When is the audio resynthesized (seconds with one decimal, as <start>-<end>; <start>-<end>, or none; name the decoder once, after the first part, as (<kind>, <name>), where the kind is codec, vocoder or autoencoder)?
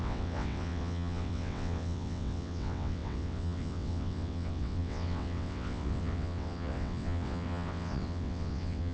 0.0-8.9 (vocoder, WaveNeXt)